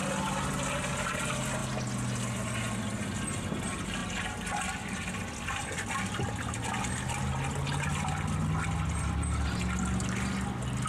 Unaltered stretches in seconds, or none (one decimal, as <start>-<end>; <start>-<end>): 0.0-10.9